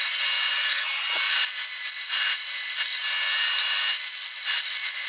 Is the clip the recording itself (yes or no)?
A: yes